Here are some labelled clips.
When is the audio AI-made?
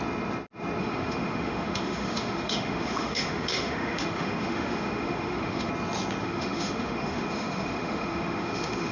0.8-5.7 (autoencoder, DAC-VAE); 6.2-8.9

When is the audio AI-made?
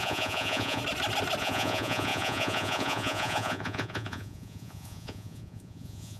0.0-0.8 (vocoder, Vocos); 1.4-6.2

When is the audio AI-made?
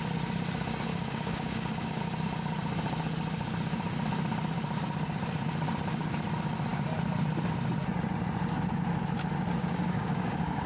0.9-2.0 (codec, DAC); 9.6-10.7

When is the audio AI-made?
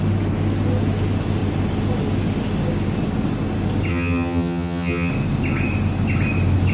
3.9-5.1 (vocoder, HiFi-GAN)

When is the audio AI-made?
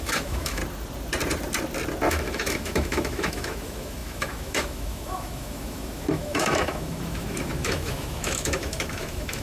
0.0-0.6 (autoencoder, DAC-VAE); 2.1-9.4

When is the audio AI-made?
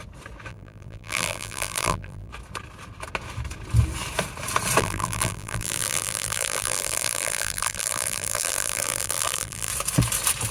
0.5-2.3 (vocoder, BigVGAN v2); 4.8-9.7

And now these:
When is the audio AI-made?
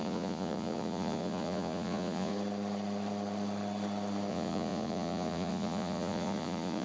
0.0-2.3 (vocoder, Vocos); 4.3-6.8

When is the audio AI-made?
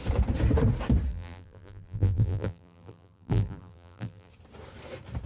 1.1-4.3 (vocoder, BigVGAN v2)